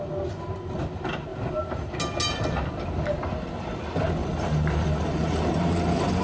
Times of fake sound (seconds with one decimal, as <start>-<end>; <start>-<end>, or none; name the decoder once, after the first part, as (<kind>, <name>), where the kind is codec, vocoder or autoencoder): 4.2-6.2 (vocoder, BigVGAN v2)